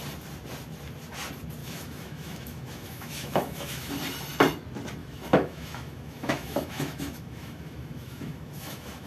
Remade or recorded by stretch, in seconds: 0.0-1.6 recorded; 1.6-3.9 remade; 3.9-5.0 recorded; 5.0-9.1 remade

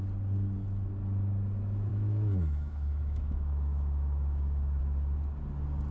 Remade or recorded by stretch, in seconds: 0.0-1.9 recorded; 1.9-4.8 remade; 4.8-5.9 recorded

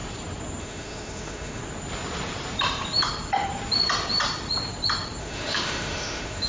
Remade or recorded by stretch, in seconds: 0.0-0.6 recorded; 0.6-1.6 remade; 1.6-5.2 recorded; 5.2-6.5 remade

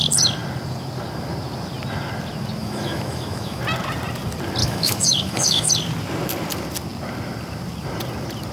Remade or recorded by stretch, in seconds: 0.0-2.6 recorded; 2.6-3.6 remade; 3.6-4.6 recorded; 4.6-5.7 remade; 5.7-8.5 recorded

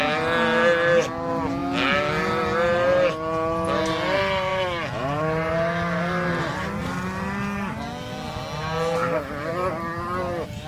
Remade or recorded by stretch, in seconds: 0.0-10.7 recorded

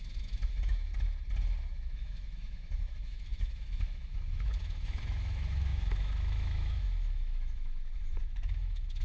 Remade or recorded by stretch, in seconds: 0.0-0.9 remade; 0.9-1.6 recorded; 1.6-9.0 remade

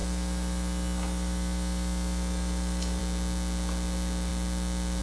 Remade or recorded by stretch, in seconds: 0.0-3.0 remade; 3.0-5.0 recorded